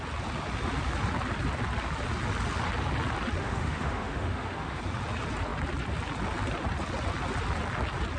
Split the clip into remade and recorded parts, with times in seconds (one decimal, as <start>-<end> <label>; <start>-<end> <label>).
0.0-3.4 recorded; 3.4-4.8 remade; 4.8-8.2 recorded